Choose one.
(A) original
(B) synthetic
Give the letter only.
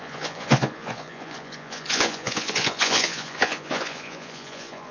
B